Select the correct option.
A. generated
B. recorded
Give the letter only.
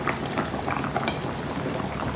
B